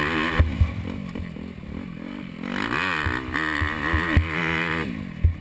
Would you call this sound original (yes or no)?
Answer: yes